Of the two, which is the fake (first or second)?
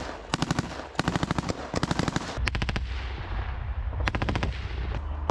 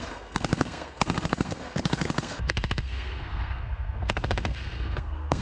second